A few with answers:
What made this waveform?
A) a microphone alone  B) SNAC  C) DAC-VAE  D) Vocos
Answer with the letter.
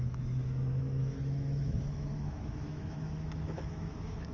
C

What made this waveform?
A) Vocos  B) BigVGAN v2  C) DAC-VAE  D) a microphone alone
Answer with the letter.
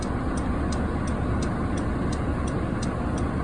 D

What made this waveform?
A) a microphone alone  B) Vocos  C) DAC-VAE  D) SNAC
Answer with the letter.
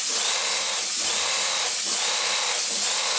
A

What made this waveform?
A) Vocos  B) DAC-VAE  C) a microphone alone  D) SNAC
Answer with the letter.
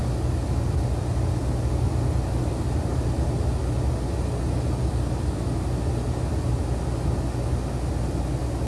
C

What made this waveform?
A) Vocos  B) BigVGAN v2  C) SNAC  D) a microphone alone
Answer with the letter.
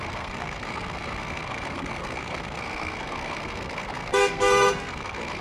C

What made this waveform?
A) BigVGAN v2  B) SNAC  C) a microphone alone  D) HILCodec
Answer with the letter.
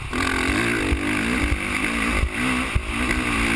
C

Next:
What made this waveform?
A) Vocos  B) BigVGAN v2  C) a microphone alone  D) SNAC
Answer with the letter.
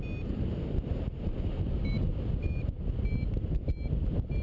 C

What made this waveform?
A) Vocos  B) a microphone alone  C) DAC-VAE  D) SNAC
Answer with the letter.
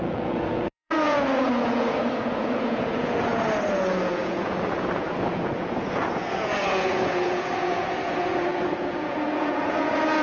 A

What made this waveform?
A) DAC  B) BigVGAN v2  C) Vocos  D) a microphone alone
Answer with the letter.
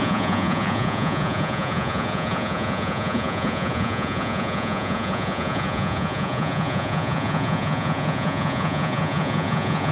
C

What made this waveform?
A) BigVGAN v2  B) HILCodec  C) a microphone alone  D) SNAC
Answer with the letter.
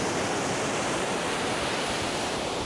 C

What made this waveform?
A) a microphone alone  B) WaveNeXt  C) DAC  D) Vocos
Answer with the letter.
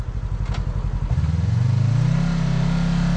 A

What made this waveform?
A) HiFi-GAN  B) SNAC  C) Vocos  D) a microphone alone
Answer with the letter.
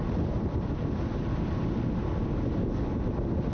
D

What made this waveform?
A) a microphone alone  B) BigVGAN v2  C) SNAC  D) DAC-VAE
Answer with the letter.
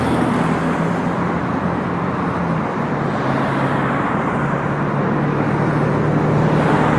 A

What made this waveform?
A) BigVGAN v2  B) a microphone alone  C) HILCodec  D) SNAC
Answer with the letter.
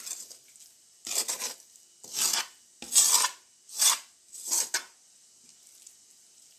B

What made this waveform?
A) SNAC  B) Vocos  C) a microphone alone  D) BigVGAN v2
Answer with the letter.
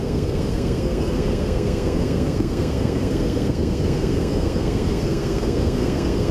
A